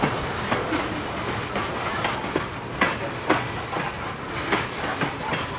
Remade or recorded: recorded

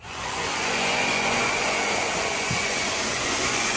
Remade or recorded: remade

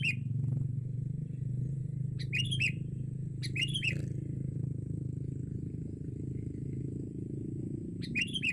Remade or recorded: recorded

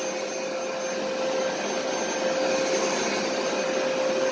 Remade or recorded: recorded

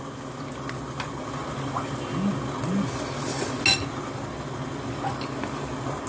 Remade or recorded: recorded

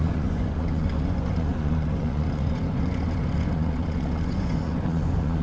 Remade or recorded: remade